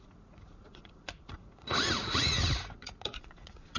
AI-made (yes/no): yes